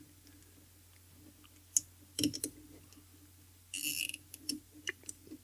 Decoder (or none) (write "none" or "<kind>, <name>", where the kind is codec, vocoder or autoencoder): none